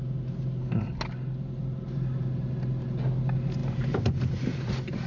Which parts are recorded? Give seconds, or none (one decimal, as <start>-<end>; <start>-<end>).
0.8-1.6; 2.3-3.6